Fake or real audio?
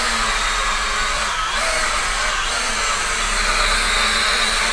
real